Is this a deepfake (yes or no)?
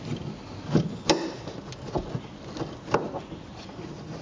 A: no